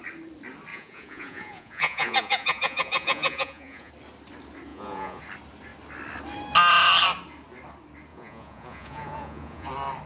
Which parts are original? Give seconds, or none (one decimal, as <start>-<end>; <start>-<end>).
0.0-0.7; 3.9-4.7; 5.2-8.1; 9.7-10.1